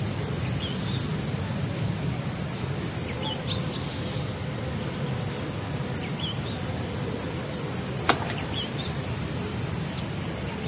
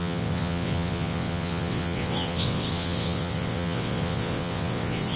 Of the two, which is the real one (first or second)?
first